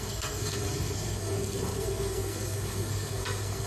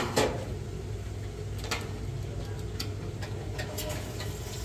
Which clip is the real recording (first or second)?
second